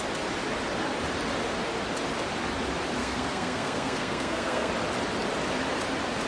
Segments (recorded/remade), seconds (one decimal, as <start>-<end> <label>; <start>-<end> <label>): 0.0-3.0 recorded; 3.0-4.7 remade; 4.7-6.3 recorded